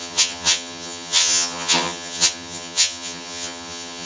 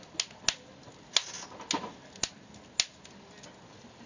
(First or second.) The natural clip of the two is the second